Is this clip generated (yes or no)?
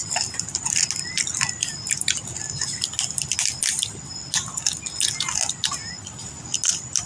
no